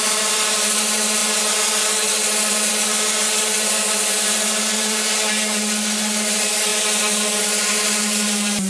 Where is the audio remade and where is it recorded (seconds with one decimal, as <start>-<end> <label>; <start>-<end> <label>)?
0.0-8.7 recorded